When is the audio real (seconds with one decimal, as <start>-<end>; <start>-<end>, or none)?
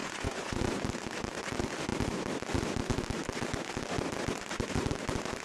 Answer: 0.6-5.4